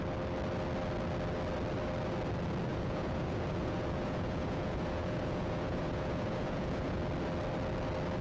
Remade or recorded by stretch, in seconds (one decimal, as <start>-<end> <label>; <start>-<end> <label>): 0.0-2.7 recorded; 2.7-7.0 remade; 7.0-8.2 recorded